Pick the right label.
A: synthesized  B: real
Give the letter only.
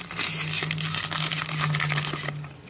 A